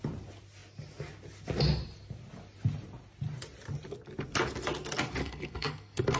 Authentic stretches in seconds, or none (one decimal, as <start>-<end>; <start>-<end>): 0.0-5.2